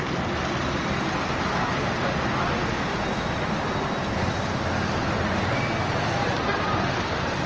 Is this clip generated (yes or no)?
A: no